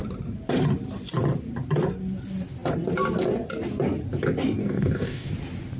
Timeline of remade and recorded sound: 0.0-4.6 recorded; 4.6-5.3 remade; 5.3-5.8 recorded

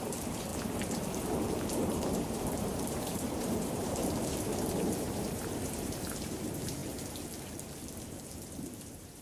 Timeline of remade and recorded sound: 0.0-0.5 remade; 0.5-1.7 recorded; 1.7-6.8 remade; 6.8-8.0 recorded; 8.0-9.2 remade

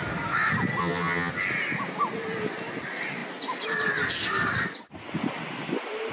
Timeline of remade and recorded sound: 0.0-0.8 recorded; 0.8-1.3 remade; 1.3-6.1 recorded